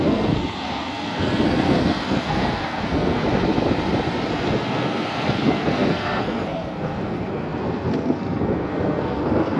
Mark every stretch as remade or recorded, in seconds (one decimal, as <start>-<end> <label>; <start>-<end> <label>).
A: 0.0-3.2 remade; 3.2-4.3 recorded; 4.3-9.6 remade